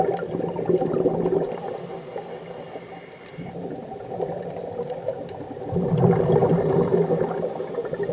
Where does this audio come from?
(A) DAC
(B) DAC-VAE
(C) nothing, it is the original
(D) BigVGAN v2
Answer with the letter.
C